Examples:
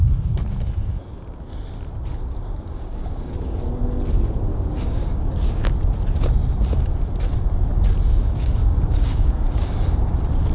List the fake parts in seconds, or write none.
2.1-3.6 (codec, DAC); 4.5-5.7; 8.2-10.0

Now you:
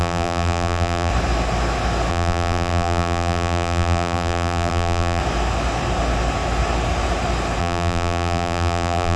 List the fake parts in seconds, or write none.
0.0-1.1 (vocoder, BigVGAN v2); 2.1-5.2; 7.6-9.2

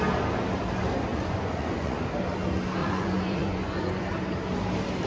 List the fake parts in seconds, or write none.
1.1-2.0 (vocoder, Vocos); 2.8-4.0

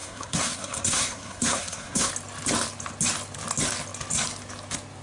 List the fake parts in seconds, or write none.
0.0-2.1 (codec, SNAC)

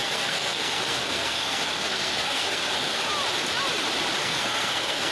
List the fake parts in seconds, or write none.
0.0-3.1 (codec, SNAC); 4.2-5.1

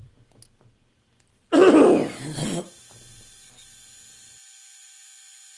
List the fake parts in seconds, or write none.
none

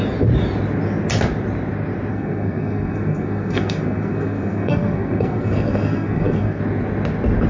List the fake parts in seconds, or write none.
2.1-6.6 (codec, SNAC)

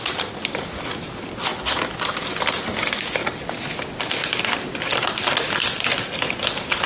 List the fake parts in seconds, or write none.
none